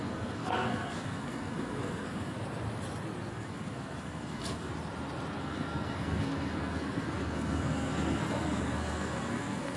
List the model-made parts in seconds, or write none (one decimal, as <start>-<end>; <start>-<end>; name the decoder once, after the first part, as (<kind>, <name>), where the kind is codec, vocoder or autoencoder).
0.0-2.4 (codec, SNAC); 3.3-4.7; 5.4-9.8